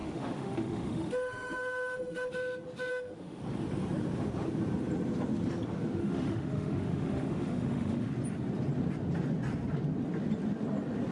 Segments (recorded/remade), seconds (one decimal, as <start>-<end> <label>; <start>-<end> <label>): 0.0-2.3 remade; 2.3-2.9 recorded; 2.9-3.4 remade; 3.4-6.0 recorded; 6.0-8.1 remade; 8.1-11.1 recorded